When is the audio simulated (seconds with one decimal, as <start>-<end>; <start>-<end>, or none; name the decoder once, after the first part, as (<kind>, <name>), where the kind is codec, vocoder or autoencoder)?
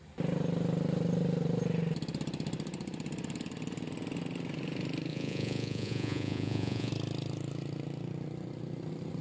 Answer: 5.1-6.9 (vocoder, Vocos)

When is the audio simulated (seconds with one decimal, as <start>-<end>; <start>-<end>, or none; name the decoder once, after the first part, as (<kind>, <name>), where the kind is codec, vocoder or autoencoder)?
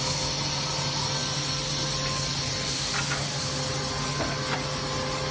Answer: none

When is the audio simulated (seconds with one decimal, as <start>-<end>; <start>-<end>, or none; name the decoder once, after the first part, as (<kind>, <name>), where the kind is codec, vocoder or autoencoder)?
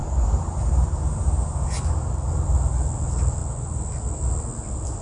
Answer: 0.0-2.1 (vocoder, BigVGAN v2)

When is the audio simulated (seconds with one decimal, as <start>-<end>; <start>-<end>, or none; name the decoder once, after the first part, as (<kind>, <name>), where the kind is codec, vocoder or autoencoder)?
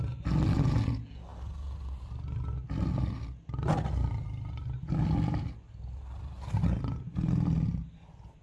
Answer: none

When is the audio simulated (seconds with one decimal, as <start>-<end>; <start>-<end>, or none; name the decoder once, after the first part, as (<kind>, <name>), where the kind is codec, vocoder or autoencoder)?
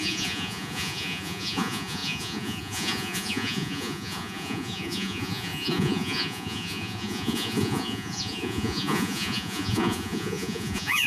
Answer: 0.0-11.1 (vocoder, Vocos)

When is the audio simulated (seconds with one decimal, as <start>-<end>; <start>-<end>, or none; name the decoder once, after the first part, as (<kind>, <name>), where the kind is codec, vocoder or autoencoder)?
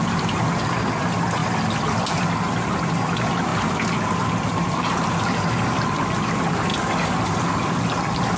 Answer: none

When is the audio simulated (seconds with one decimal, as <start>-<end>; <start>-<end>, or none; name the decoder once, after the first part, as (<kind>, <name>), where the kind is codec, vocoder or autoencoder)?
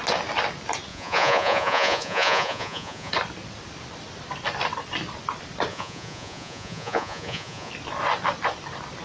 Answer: 0.9-3.1 (vocoder, Vocos); 5.7-7.7